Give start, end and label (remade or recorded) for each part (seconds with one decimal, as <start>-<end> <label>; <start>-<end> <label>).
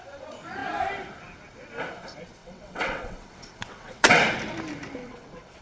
0.0-2.4 recorded; 2.4-4.2 remade; 4.2-5.0 recorded; 5.0-5.6 remade